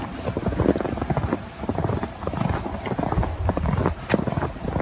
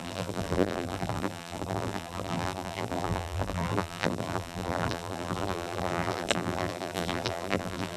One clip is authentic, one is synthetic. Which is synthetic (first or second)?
second